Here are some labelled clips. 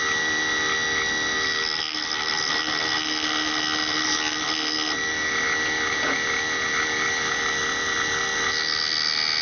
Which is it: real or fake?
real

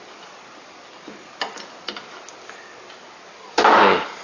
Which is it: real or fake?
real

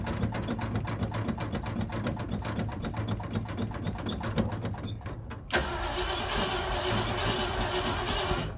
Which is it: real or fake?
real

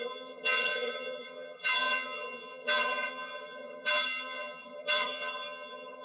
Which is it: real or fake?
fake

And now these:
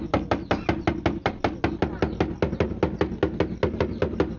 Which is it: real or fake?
real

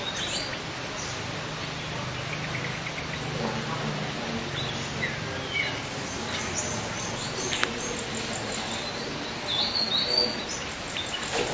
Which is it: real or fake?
real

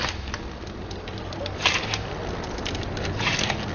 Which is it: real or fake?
real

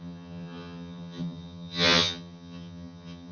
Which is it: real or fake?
fake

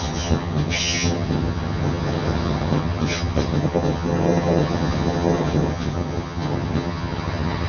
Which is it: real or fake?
fake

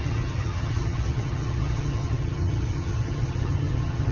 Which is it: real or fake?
fake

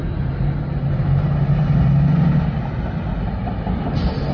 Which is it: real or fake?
real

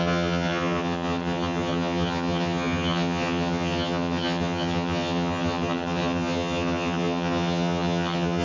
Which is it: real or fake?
fake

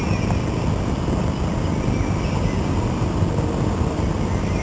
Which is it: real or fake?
real